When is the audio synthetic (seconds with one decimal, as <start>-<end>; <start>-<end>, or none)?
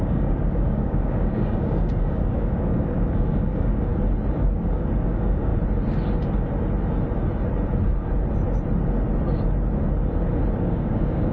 0.0-3.9; 4.4-5.5; 10.6-11.3